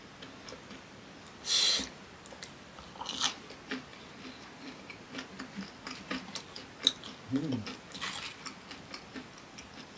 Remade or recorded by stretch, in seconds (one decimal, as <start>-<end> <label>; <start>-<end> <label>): 0.0-10.0 recorded